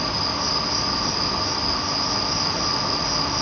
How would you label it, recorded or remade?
recorded